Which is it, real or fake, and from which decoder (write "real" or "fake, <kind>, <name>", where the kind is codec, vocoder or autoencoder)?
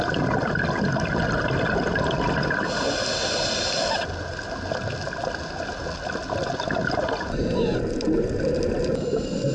real